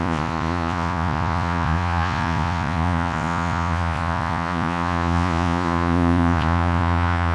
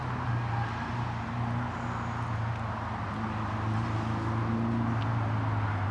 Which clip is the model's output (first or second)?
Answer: first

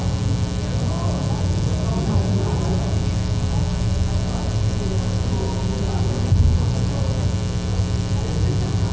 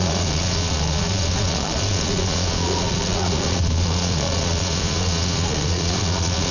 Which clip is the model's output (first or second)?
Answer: second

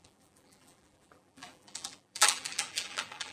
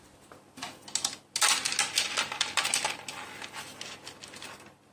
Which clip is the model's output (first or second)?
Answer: first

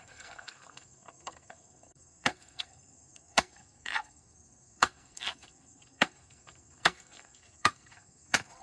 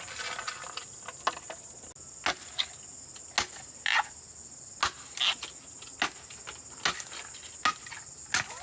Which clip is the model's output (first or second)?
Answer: first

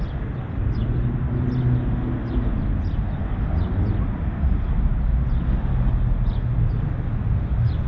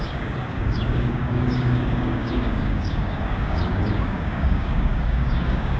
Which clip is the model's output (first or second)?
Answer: second